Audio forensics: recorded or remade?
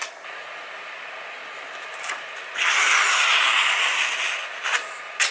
recorded